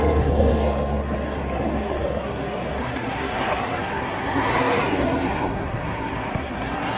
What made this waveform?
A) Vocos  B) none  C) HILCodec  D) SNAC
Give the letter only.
D